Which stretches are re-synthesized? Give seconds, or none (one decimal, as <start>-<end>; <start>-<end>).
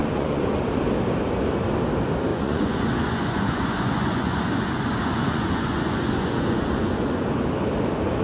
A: 0.0-0.8; 2.3-7.2